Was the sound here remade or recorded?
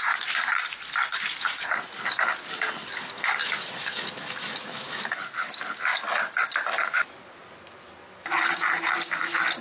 recorded